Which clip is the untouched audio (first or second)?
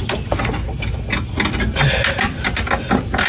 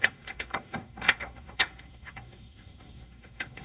first